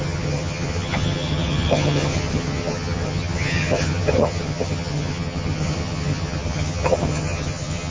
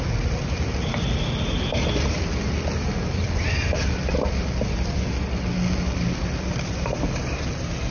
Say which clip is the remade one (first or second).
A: first